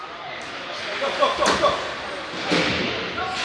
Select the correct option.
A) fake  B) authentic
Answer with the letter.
B